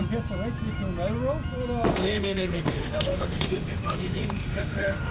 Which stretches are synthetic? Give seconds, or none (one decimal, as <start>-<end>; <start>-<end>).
1.9-5.1